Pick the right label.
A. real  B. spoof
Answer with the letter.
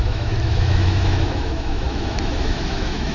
B